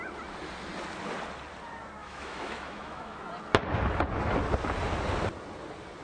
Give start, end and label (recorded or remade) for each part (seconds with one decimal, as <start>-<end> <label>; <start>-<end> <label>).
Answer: 0.0-2.0 recorded; 2.0-3.2 remade; 3.2-6.0 recorded